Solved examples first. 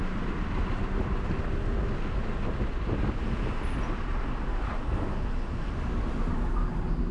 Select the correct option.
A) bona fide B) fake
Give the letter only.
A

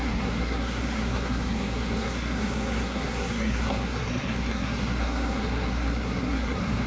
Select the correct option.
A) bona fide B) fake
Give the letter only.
B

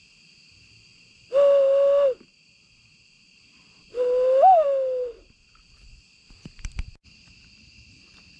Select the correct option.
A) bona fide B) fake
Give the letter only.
A